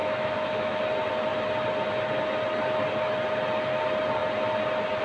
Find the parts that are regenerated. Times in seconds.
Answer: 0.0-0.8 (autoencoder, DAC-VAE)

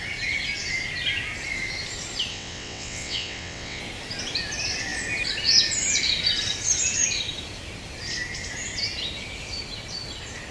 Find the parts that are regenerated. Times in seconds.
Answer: 2.3-3.8 (vocoder, WaveNeXt)

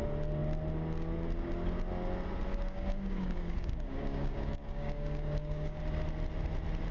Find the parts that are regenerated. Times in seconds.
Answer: 2.5-5.8 (codec, DAC)

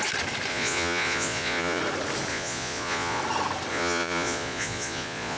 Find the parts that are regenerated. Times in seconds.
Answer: 0.5-1.8 (vocoder, Vocos); 2.3-3.2; 3.7-5.4

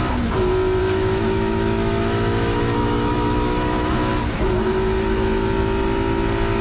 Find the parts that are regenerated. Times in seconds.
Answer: 0.8-4.1 (autoencoder, DAC-VAE)

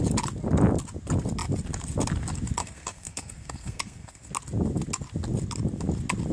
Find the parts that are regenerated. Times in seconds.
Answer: 2.6-4.3 (codec, SNAC)

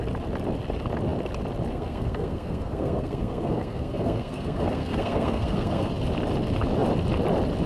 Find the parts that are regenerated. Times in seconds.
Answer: 1.7-5.9 (codec, SNAC)

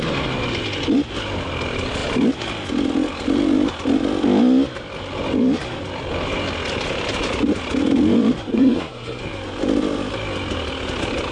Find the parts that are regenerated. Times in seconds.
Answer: 8.5-9.2 (codec, SNAC)